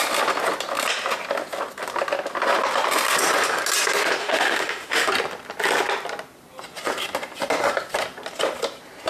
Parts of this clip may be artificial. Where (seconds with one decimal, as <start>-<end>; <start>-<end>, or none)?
4.2-5.1